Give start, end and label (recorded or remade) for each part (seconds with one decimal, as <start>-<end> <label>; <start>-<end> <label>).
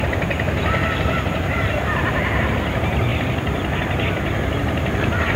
0.0-5.4 recorded